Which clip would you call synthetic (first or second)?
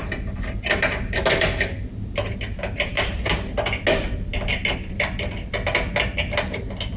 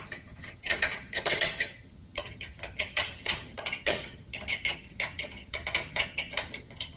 second